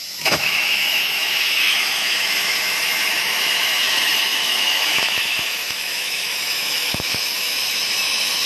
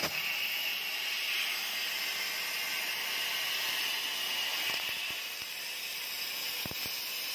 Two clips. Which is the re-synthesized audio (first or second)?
first